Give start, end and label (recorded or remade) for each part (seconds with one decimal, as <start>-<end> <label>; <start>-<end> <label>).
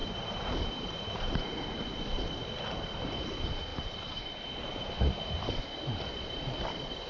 0.0-1.4 remade; 1.4-7.1 recorded